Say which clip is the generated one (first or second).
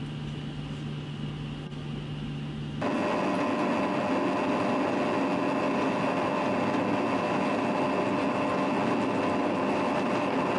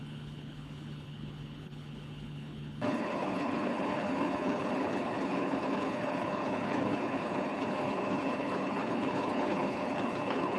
second